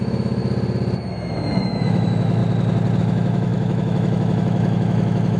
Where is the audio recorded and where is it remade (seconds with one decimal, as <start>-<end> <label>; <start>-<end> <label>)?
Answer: 0.0-0.4 remade; 0.4-1.1 recorded; 1.1-2.4 remade; 2.4-3.0 recorded; 3.0-5.4 remade

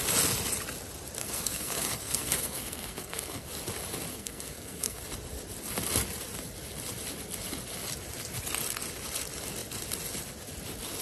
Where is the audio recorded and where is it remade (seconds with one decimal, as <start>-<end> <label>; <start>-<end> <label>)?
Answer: 0.0-1.2 recorded; 1.2-3.5 remade; 3.5-4.1 recorded; 4.1-5.0 remade; 5.0-11.0 recorded